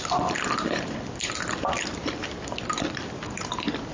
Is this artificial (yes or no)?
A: no